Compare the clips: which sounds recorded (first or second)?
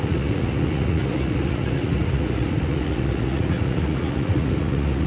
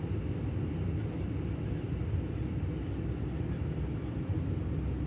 second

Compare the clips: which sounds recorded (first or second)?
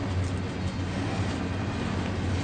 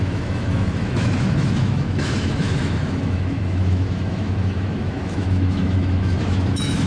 first